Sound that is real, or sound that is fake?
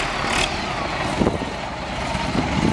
real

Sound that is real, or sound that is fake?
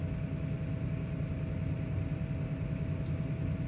real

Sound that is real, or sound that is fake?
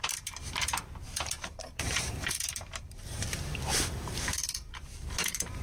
fake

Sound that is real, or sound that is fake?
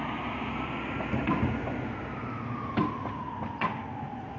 real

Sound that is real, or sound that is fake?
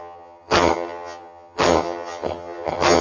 fake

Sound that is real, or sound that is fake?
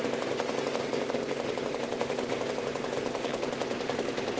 real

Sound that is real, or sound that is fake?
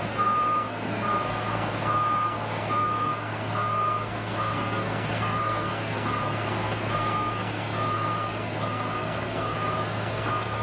fake